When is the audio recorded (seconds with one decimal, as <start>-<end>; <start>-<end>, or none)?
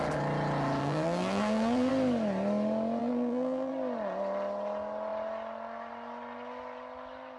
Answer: 0.0-0.8; 1.9-3.0; 3.7-7.4